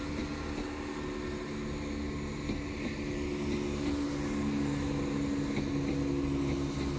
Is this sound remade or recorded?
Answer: recorded